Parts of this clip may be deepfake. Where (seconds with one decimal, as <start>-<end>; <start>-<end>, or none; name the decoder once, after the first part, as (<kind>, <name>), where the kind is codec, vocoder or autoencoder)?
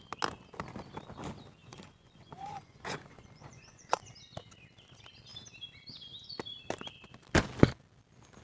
1.6-4.1 (vocoder, Vocos)